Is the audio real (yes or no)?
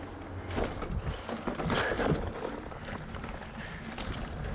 yes